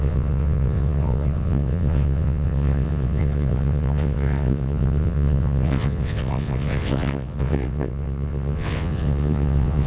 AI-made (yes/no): yes